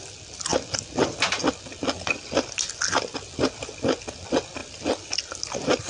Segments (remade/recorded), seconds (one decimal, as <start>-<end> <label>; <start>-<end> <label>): 0.0-4.6 recorded; 4.6-5.2 remade; 5.2-5.9 recorded

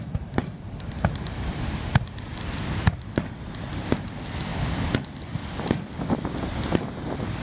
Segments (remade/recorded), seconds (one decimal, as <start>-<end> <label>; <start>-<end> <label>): 0.0-7.4 recorded

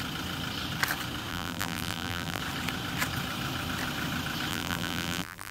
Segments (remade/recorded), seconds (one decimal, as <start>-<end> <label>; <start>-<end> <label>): 0.0-1.3 recorded; 1.3-2.4 remade; 2.4-4.5 recorded; 4.5-5.5 remade

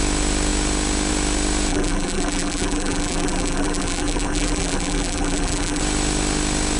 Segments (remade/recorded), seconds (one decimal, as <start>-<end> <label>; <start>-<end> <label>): 0.0-1.7 recorded; 1.7-5.8 remade; 5.8-6.8 recorded

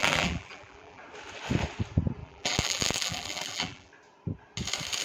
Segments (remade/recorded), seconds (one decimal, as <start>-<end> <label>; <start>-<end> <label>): 0.0-1.0 remade; 1.0-2.2 recorded; 2.2-3.9 remade; 3.9-5.0 recorded

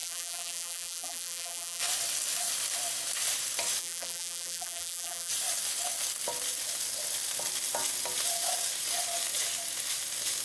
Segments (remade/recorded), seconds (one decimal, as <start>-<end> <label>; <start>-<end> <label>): 0.0-1.8 remade; 1.8-3.8 recorded; 3.8-5.3 remade; 5.3-10.4 recorded